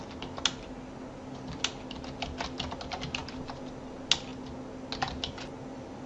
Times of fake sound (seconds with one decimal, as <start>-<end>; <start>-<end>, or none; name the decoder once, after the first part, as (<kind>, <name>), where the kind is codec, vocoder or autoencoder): none